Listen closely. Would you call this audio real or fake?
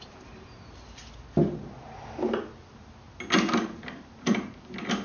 real